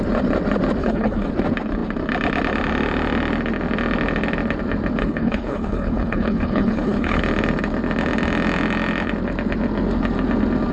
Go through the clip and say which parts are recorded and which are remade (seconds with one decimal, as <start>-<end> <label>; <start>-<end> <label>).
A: 0.0-0.8 recorded; 0.8-1.3 remade; 1.3-5.0 recorded; 5.0-7.2 remade; 7.2-10.7 recorded